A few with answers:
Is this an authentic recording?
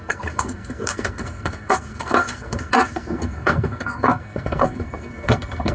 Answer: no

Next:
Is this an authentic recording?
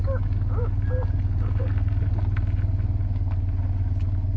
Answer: yes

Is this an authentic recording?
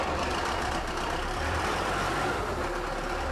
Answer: no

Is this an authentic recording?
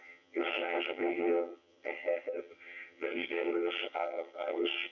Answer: no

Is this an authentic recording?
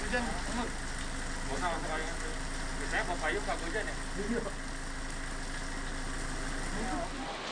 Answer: yes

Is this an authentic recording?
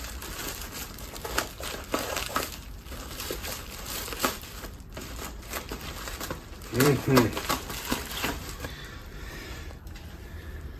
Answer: no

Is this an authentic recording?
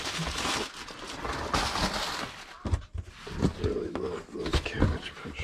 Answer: yes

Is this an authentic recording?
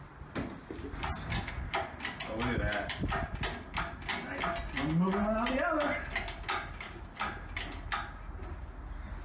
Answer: yes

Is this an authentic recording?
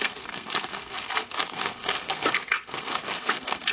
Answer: no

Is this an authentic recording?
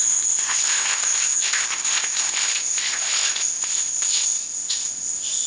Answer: no